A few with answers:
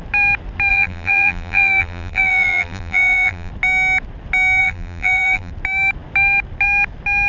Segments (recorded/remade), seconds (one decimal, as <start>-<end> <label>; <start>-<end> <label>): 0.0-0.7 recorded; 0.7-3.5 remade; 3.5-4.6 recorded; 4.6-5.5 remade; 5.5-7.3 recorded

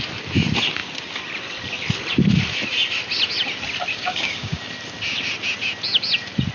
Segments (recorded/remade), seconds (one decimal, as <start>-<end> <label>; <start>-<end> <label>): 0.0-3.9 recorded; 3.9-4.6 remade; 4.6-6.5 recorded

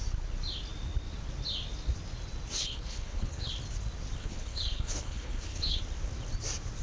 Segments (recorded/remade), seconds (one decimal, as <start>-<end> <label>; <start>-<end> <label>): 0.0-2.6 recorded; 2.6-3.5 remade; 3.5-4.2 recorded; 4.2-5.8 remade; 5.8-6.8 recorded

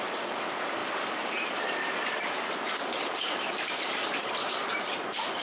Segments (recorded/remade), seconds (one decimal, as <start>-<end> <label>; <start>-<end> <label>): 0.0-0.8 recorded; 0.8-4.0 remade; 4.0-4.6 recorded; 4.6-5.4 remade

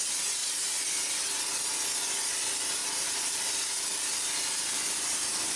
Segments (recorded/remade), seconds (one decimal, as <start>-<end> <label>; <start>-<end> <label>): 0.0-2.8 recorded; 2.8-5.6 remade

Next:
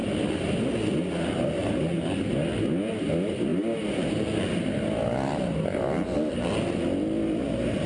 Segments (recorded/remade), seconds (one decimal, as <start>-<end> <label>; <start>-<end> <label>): 0.0-7.9 recorded

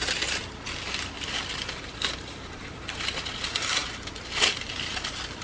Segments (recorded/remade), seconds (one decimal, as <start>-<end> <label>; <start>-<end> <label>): 0.0-5.4 recorded

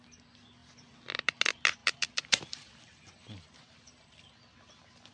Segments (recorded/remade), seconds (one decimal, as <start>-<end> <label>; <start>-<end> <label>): 0.0-1.8 recorded; 1.8-4.3 remade; 4.3-5.1 recorded